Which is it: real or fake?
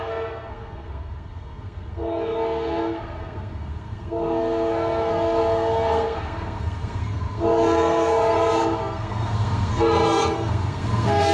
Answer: fake